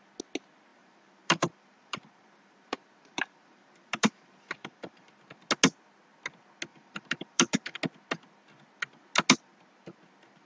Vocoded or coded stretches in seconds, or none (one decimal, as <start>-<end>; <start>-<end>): 0.7-5.1; 6.7-7.8